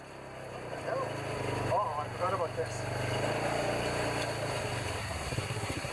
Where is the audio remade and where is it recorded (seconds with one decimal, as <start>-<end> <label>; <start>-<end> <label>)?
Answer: 0.0-5.0 recorded; 5.0-5.9 remade